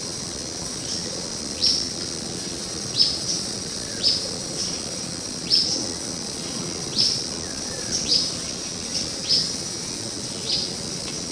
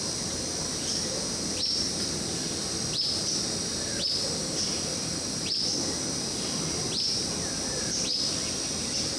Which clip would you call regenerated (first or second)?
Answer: first